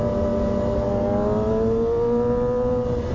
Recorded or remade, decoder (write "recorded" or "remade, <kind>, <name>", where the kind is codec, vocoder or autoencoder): recorded